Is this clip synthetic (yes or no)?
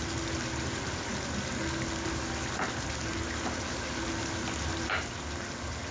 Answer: no